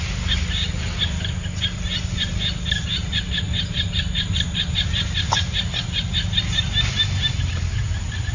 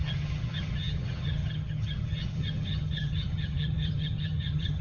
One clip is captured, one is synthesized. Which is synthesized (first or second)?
second